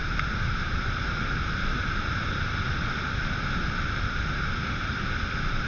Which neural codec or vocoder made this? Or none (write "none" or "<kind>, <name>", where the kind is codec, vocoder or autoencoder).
none